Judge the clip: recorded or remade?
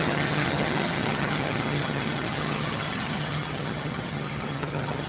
remade